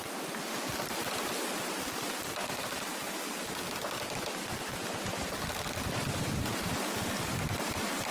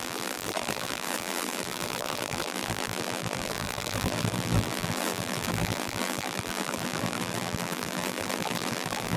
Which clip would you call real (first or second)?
first